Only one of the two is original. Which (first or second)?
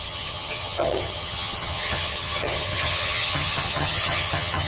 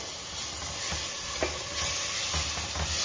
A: second